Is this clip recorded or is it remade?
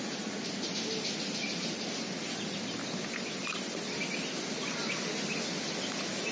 recorded